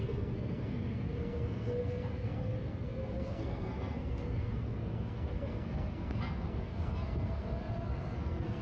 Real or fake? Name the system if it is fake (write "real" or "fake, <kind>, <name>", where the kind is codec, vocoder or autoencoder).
fake, codec, SNAC